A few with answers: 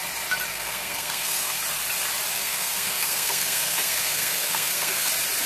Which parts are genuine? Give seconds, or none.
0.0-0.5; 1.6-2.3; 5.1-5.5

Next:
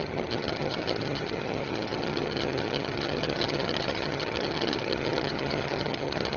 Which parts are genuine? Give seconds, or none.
none

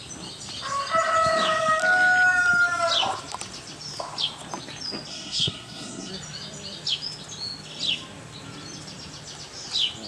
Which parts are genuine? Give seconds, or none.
0.0-5.1; 6.1-10.1

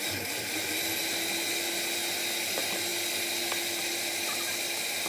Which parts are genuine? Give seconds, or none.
0.0-5.1